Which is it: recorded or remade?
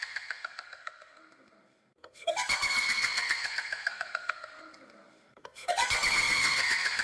remade